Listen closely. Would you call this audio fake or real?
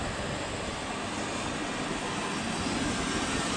real